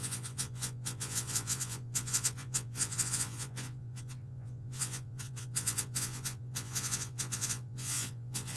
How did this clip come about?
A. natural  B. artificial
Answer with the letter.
B